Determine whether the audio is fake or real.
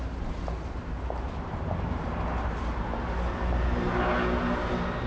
real